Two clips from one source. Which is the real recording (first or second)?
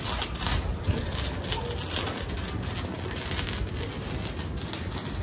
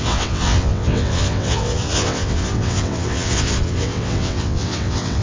first